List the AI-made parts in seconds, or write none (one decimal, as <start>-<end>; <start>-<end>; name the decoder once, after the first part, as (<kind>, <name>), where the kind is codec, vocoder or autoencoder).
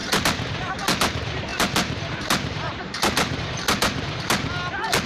0.0-0.7 (vocoder, BigVGAN v2)